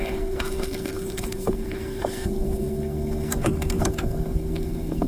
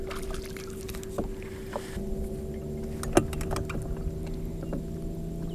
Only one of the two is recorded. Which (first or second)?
second